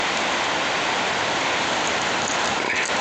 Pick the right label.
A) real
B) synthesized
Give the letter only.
A